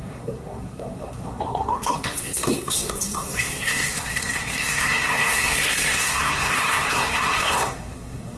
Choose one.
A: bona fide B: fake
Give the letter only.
B